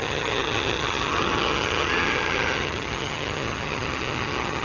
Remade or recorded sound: remade